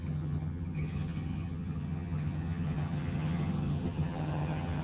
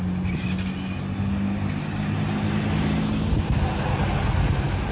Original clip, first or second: second